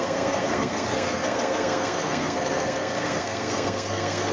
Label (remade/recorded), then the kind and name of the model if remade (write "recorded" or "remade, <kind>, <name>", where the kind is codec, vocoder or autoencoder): remade, codec, SNAC